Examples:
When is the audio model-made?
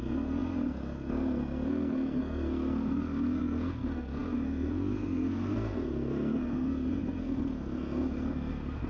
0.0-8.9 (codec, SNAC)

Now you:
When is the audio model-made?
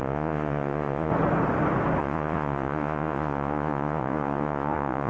0.0-1.1 (vocoder, Vocos); 2.0-5.1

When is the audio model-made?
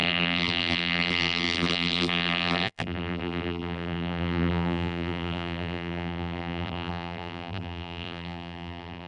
0.0-9.1 (vocoder, BigVGAN v2)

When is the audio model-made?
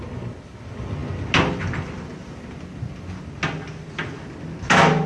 none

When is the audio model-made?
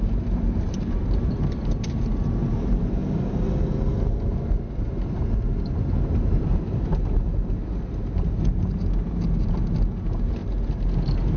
0.0-3.0 (vocoder, BigVGAN v2); 6.4-11.4